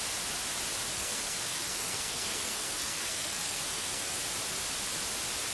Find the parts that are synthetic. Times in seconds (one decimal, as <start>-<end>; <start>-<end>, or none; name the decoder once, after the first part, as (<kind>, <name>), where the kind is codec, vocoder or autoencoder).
0.9-4.2 (codec, SNAC)